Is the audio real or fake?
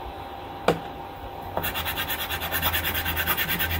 real